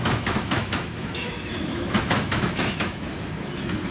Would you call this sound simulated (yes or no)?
yes